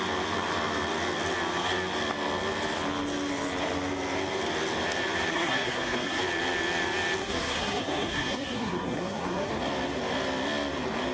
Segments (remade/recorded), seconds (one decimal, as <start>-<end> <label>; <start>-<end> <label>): 0.0-5.3 recorded; 5.3-6.2 remade; 6.2-7.2 recorded; 7.2-9.5 remade; 9.5-11.1 recorded